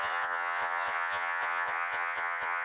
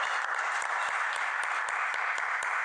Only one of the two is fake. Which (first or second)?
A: first